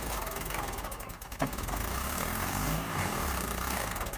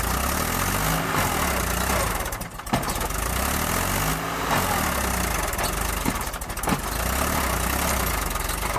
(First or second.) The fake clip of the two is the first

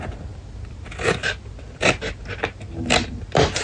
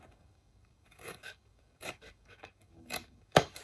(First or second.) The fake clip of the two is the second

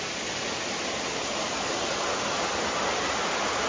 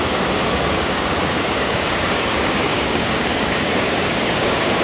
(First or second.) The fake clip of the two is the second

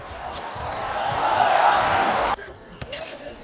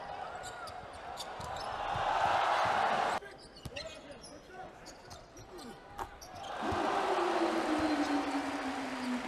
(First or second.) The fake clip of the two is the first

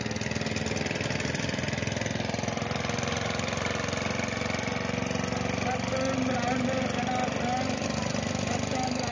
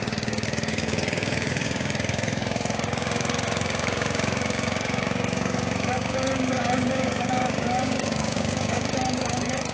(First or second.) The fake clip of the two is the second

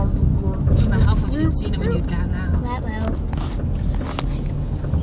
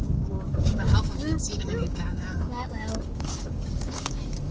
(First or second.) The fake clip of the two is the second